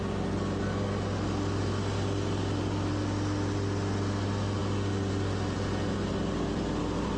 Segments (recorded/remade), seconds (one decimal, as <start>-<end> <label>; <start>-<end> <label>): 0.0-7.2 recorded